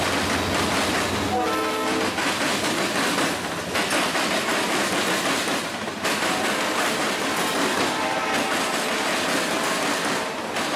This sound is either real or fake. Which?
real